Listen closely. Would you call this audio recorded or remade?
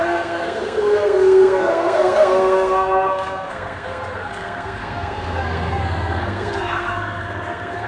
remade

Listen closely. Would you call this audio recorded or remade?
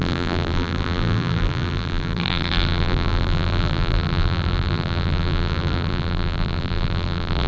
remade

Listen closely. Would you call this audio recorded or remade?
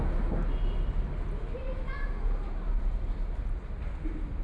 recorded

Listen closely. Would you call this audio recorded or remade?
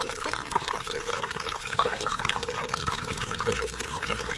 remade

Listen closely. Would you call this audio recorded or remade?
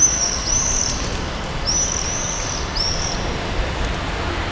recorded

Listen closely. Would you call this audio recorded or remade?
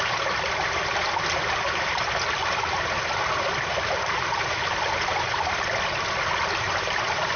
recorded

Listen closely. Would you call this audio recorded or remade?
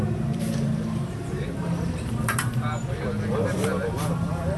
remade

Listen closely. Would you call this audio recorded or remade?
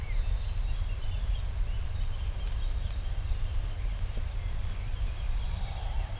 remade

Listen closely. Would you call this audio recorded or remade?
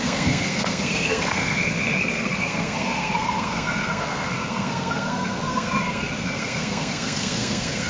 remade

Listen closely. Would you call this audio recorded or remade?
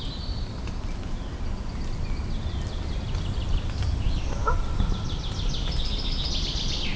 recorded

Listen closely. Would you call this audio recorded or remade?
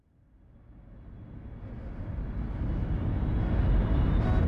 recorded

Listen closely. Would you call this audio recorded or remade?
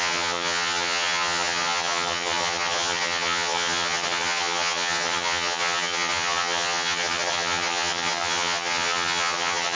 remade